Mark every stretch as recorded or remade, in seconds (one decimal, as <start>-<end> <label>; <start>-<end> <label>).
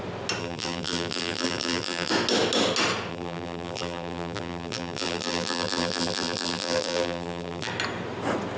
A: 0.0-0.4 recorded; 0.4-2.1 remade; 2.1-3.1 recorded; 3.1-7.7 remade; 7.7-8.6 recorded